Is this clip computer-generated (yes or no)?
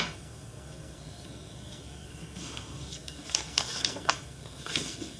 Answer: yes